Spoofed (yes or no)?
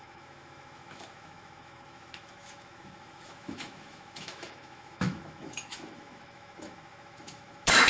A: yes